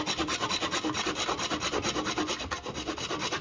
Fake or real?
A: real